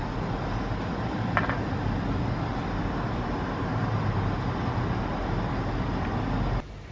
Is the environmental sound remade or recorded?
recorded